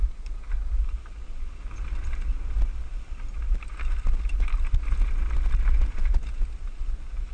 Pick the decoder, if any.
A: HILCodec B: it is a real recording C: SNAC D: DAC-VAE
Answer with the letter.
B